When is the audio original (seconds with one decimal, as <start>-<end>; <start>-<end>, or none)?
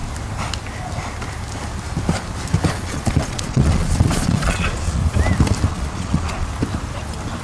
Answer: 0.0-2.7; 5.0-5.7; 6.5-7.4